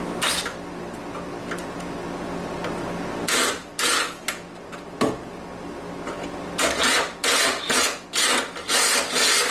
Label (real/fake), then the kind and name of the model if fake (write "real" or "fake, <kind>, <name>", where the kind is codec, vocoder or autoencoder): real